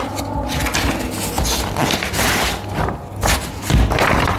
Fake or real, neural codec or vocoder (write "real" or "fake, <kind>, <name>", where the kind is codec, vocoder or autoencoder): real